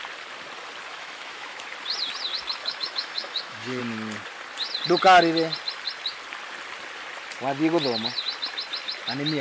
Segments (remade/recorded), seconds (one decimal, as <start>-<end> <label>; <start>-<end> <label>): 0.0-0.9 recorded; 0.9-1.7 remade; 1.7-2.6 recorded; 2.6-3.8 remade; 3.8-9.4 recorded